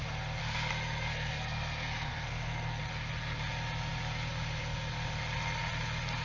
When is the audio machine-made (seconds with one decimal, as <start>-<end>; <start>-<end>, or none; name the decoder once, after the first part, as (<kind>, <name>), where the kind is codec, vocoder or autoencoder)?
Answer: 0.4-2.8 (codec, SNAC)